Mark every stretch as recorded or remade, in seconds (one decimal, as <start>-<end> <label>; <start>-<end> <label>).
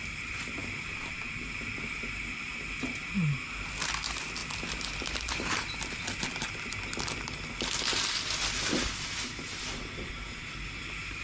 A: 0.0-11.2 recorded